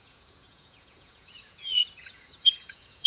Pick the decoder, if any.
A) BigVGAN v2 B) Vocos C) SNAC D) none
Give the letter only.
B